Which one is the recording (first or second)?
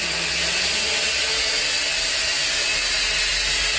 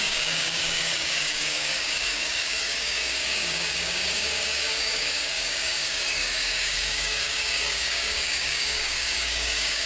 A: first